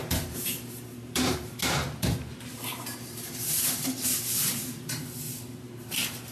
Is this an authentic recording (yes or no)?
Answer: no